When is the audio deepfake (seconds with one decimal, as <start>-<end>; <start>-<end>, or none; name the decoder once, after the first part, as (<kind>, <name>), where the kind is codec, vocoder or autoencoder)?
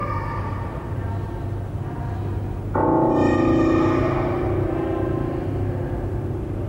none